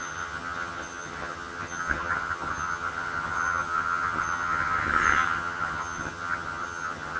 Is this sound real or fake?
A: fake